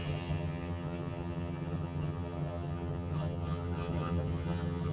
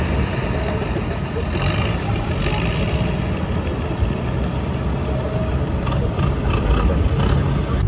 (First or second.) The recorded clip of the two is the second